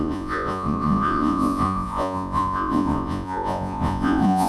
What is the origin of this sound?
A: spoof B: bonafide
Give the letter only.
A